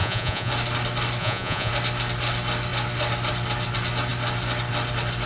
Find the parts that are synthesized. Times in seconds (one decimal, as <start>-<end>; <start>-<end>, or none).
0.0-0.5; 1.2-1.7